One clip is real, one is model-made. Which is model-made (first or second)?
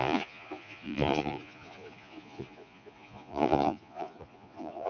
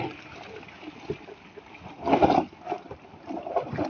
first